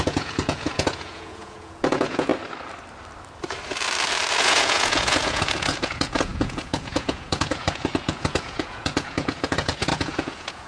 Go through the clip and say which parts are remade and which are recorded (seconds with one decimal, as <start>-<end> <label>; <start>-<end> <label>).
0.0-2.3 remade; 2.3-4.4 recorded; 4.4-10.7 remade